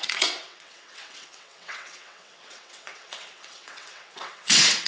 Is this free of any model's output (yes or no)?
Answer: no